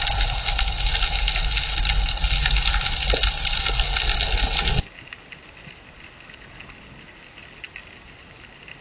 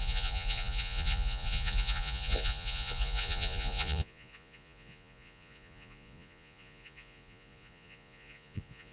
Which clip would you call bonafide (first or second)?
first